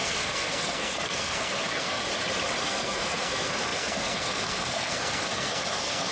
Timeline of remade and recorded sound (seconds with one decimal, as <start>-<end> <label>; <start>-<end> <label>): 0.0-2.0 remade; 2.0-2.6 recorded; 2.6-6.1 remade

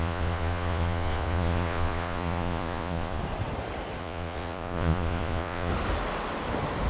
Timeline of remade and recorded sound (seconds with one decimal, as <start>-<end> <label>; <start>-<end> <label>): 0.0-3.2 remade; 3.2-4.0 recorded; 4.0-5.7 remade; 5.7-6.9 recorded